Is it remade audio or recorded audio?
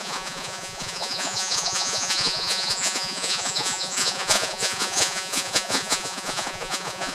remade